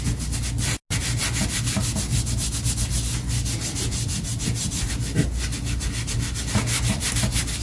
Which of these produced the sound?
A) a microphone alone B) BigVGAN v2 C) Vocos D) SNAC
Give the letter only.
A